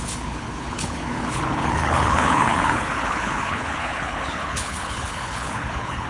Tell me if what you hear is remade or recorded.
remade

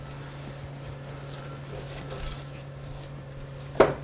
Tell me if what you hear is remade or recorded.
recorded